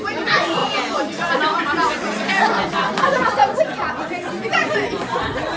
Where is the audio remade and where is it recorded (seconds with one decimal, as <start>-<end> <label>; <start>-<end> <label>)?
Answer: 0.0-5.6 recorded